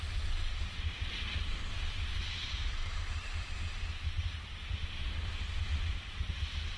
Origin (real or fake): real